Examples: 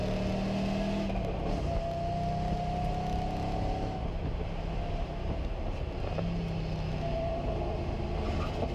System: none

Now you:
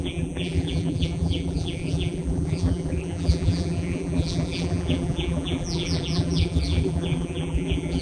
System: vocoder, BigVGAN v2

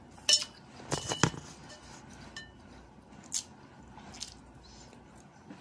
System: none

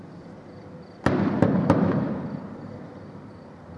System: vocoder, BigVGAN v2